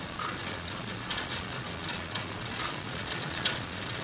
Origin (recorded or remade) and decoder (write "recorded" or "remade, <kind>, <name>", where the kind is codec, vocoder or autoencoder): remade, vocoder, Vocos